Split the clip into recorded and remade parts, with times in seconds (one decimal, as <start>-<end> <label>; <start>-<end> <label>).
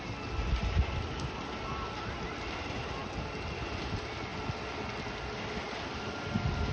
0.0-6.7 recorded